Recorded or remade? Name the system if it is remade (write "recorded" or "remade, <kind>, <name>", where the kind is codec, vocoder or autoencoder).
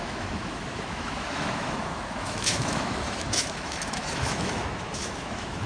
remade, autoencoder, DAC-VAE